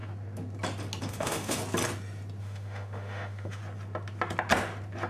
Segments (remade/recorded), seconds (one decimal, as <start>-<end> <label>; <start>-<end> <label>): 0.0-1.0 recorded; 1.0-1.6 remade; 1.6-2.4 recorded; 2.4-3.6 remade; 3.6-5.1 recorded